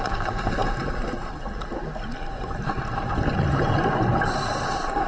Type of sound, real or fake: real